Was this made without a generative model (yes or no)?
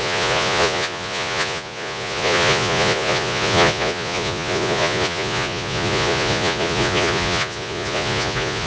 no